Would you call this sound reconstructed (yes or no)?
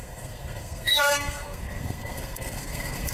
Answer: yes